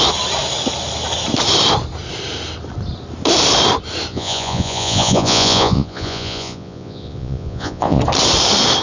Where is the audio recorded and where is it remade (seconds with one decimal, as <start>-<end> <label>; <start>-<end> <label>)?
0.0-4.1 recorded; 4.1-8.0 remade; 8.0-8.8 recorded